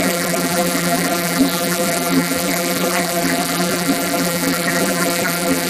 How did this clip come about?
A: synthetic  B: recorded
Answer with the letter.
A